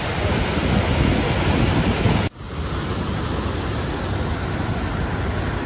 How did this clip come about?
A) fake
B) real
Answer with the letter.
B